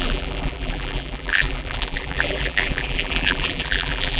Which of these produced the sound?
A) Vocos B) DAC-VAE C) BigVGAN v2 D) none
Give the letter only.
C